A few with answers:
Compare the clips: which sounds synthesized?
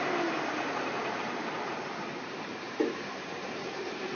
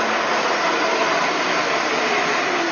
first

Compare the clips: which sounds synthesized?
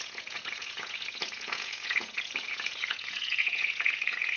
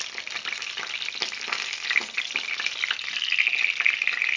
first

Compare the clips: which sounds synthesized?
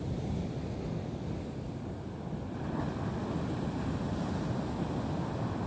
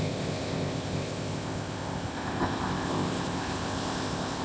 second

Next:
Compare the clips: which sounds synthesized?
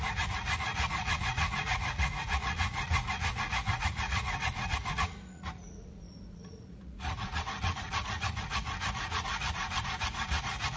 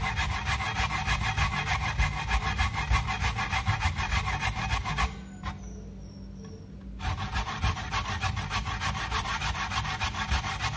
first